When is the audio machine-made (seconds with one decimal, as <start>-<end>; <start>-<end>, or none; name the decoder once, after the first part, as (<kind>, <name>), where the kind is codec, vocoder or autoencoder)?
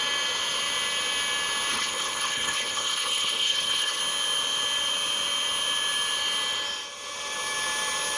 1.7-4.0 (codec, HILCodec)